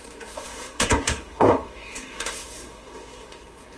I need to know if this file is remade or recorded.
remade